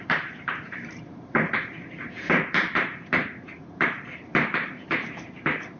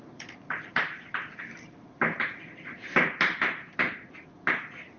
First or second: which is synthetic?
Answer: first